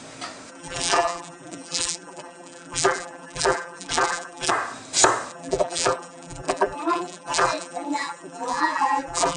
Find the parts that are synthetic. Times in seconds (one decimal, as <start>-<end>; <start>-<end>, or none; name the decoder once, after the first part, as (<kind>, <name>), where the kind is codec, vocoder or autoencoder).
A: 0.5-4.5 (vocoder, BigVGAN v2); 5.3-9.4